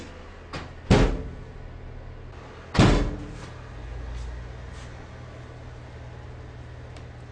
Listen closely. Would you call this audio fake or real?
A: real